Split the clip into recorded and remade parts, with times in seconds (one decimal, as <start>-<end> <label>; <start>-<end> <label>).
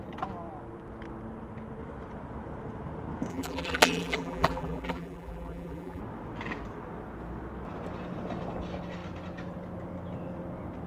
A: 0.0-3.3 recorded; 3.3-6.0 remade; 6.0-10.9 recorded